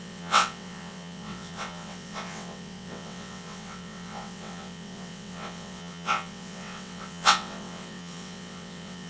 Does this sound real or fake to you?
fake